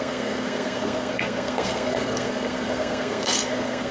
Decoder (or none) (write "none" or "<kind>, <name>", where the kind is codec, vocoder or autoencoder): codec, SNAC